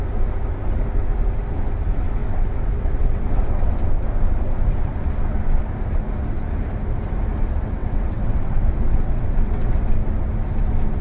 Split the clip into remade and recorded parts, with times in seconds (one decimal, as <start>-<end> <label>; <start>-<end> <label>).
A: 0.0-2.2 recorded; 2.2-3.7 remade; 3.7-7.8 recorded; 7.8-9.9 remade; 9.9-11.0 recorded